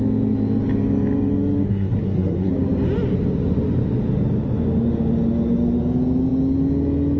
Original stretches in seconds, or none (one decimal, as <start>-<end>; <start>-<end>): 0.0-1.7; 2.5-7.2